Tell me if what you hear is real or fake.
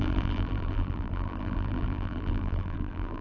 fake